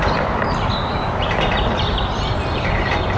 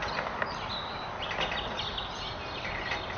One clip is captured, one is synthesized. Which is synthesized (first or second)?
first